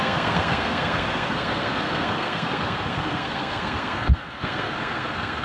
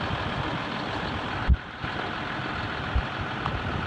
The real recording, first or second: second